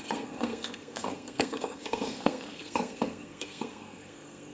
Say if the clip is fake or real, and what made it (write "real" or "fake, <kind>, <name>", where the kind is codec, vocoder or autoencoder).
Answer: fake, codec, SNAC